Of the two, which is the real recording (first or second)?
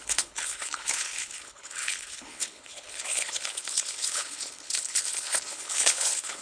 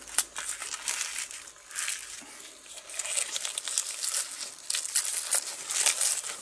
second